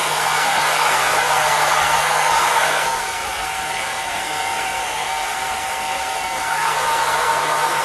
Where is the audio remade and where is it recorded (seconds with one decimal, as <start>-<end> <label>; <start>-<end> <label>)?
0.0-7.8 remade